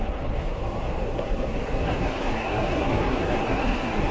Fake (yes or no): yes